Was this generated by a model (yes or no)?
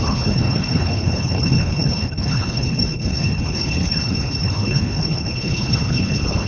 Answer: yes